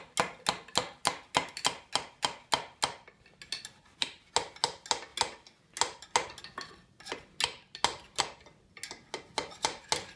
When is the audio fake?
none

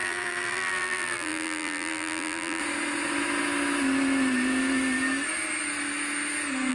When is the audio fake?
0.0-2.6 (vocoder, BigVGAN v2)

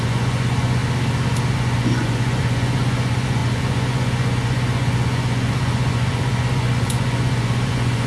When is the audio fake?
0.0-0.8 (vocoder, Vocos); 1.5-8.1

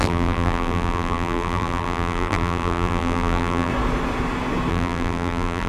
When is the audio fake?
0.0-3.7 (vocoder, BigVGAN v2); 4.7-5.7

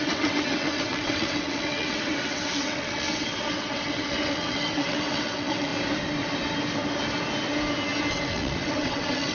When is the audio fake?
0.0-5.7 (vocoder, WaveNeXt); 8.1-9.3

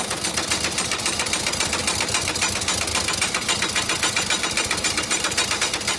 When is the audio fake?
none

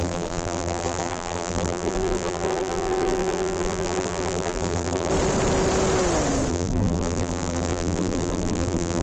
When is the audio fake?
0.0-5.1 (vocoder, BigVGAN v2); 6.5-9.0

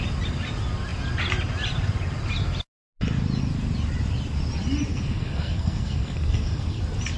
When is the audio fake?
4.9-6.8 (codec, SNAC)